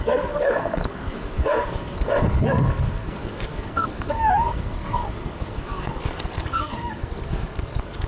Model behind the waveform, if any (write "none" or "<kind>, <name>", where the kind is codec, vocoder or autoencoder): codec, SNAC